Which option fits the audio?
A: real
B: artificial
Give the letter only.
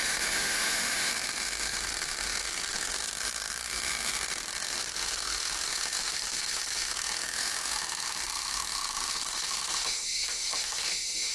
B